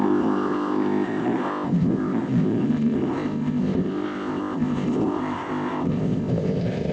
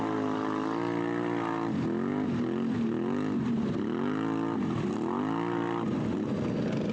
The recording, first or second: second